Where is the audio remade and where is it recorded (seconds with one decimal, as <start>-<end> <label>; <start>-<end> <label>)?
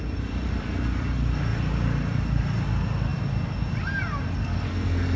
0.0-4.4 recorded; 4.4-5.2 remade